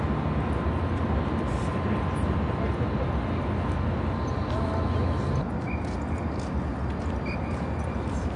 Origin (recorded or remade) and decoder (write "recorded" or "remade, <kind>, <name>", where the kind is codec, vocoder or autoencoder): recorded